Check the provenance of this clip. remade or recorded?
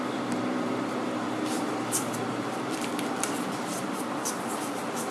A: remade